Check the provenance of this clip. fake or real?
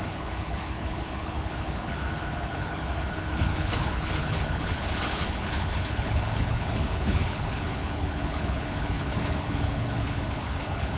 fake